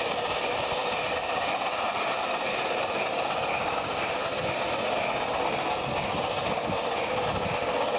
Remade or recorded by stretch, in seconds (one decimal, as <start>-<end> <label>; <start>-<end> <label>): 0.0-0.8 recorded; 0.8-4.2 remade; 4.2-8.0 recorded